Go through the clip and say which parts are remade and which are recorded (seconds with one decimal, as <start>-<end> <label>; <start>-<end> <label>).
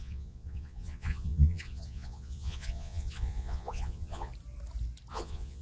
0.0-4.3 remade; 4.3-5.1 recorded; 5.1-5.6 remade